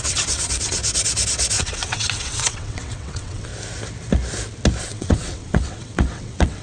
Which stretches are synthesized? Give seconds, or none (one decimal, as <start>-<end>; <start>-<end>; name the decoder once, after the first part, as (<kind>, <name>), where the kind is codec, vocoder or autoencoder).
0.0-0.8 (vocoder, WaveNeXt); 1.6-3.5; 4.8-6.6